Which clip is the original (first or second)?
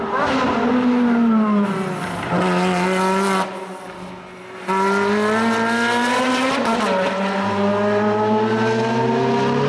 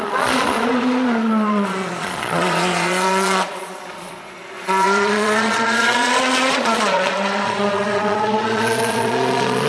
first